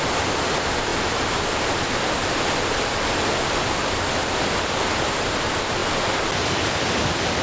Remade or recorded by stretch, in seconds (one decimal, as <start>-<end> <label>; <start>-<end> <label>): 0.0-0.9 recorded; 0.9-5.3 remade; 5.3-7.4 recorded